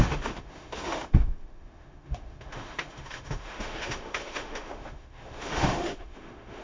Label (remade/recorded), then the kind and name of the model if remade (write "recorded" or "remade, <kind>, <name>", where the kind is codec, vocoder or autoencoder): remade, autoencoder, DAC-VAE